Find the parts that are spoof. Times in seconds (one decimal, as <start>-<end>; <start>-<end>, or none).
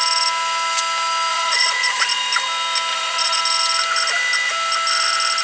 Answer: 1.3-2.2; 2.9-3.4